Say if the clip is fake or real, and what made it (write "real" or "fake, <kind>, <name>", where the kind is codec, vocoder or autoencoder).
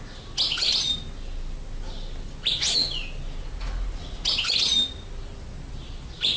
real